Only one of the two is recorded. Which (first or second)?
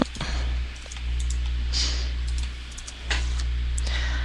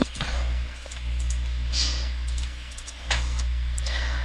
first